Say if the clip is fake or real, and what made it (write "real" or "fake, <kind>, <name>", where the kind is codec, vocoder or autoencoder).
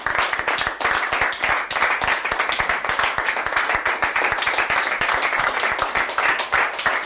real